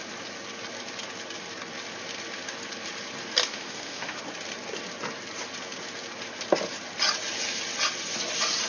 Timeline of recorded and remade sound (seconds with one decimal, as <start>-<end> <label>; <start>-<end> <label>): 0.0-3.5 recorded; 3.5-4.2 remade; 4.2-8.7 recorded